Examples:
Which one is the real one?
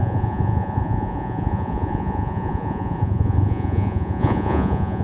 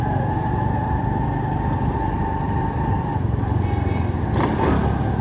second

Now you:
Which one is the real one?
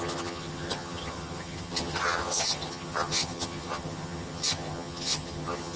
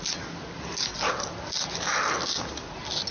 second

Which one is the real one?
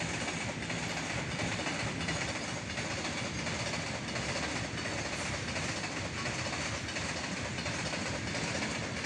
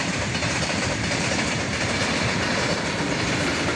first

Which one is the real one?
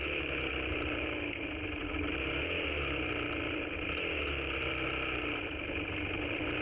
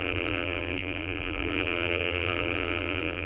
first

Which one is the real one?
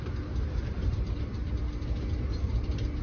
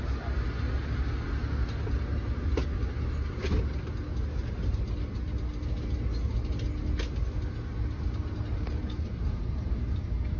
second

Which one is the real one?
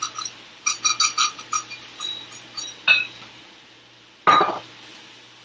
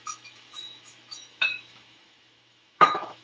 first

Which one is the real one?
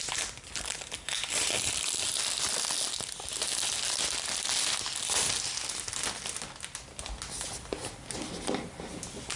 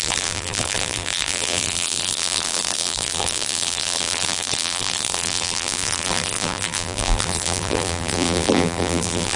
first